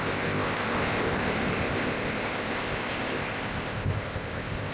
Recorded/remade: remade